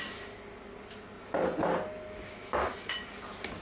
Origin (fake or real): real